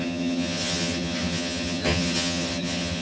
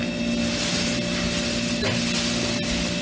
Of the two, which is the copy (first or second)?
first